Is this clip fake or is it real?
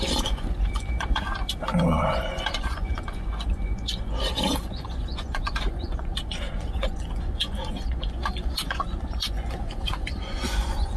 fake